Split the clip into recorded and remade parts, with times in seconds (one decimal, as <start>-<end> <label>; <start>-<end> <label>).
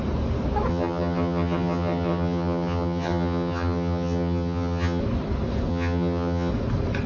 0.0-0.7 recorded; 0.7-5.0 remade; 5.0-5.7 recorded; 5.7-6.5 remade; 6.5-7.1 recorded